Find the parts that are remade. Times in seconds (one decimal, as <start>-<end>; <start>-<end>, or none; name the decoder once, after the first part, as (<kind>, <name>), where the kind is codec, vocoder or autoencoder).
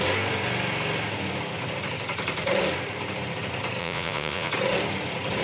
3.8-4.5 (vocoder, Vocos)